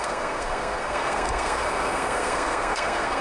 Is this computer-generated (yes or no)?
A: yes